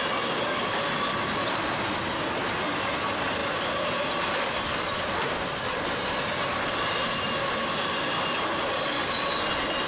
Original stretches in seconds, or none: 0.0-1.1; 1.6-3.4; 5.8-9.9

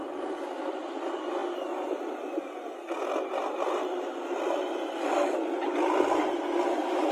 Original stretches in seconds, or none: 0.0-7.1

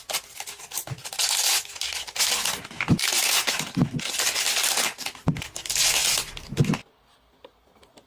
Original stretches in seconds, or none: 0.0-8.1